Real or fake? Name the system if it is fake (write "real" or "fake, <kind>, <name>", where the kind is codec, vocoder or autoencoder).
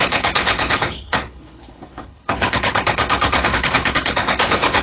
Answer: fake, codec, HILCodec